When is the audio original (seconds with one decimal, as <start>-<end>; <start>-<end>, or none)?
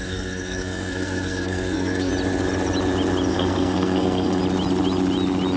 2.1-3.3; 4.4-5.6